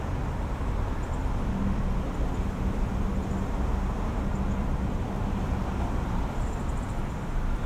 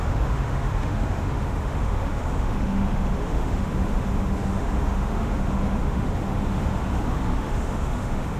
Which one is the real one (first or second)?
first